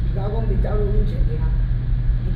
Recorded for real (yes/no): yes